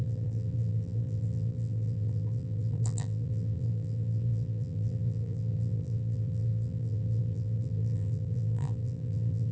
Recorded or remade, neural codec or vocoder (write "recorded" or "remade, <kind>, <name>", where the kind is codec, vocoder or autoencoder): remade, vocoder, BigVGAN v2